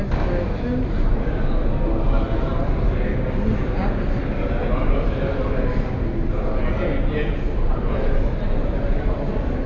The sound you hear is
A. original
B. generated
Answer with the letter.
A